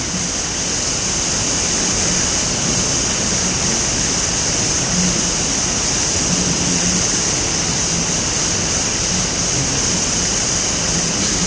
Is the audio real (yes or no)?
yes